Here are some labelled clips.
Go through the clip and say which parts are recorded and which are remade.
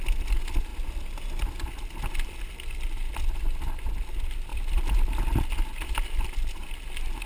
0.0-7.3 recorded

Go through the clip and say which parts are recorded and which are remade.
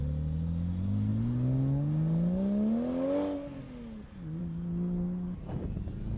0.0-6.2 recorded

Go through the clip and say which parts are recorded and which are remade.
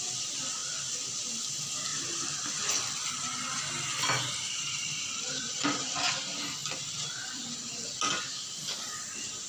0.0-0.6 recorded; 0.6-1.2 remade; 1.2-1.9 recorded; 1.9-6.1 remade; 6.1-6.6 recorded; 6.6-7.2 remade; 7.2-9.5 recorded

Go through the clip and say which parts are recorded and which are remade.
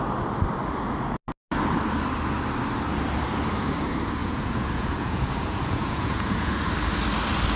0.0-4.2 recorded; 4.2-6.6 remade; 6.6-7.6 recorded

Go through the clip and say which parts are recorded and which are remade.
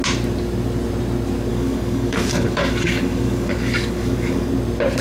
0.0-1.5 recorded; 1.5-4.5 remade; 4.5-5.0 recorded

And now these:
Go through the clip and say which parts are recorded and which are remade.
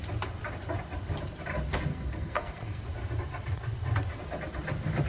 0.0-1.9 recorded; 1.9-2.8 remade; 2.8-5.1 recorded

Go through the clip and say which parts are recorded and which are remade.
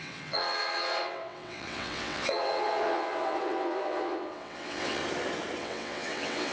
0.0-5.0 remade; 5.0-5.6 recorded; 5.6-6.5 remade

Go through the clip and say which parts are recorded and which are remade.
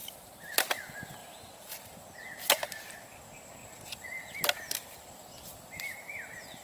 0.0-0.5 remade; 0.5-1.2 recorded; 1.2-1.9 remade; 1.9-3.6 recorded; 3.6-4.2 remade; 4.2-5.5 recorded; 5.5-6.6 remade